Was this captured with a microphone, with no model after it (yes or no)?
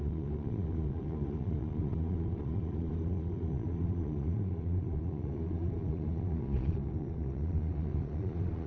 no